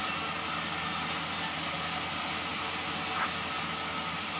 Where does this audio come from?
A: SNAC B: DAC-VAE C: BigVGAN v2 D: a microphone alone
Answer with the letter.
D